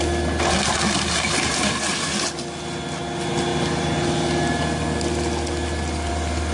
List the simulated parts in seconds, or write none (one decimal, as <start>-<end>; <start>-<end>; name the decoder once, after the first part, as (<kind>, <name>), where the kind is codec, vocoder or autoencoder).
none